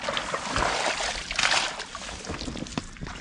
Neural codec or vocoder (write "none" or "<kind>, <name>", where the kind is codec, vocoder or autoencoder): none